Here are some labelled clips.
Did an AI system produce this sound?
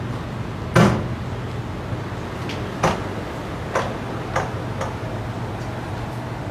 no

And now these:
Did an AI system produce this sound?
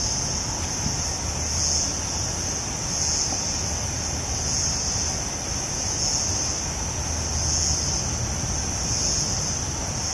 no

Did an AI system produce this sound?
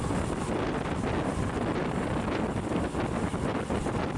no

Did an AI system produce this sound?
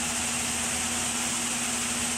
no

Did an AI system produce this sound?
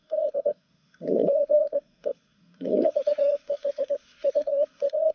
yes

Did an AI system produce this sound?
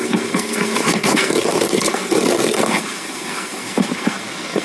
yes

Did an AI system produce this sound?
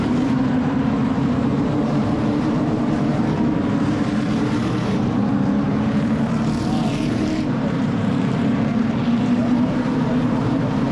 yes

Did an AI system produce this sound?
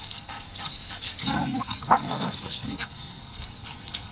yes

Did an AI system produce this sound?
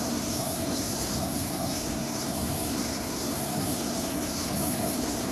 yes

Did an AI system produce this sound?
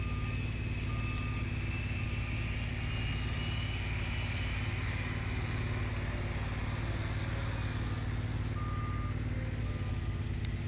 no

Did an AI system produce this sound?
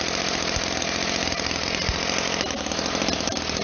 no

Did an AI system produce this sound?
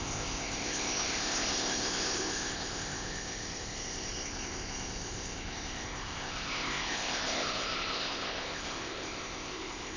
yes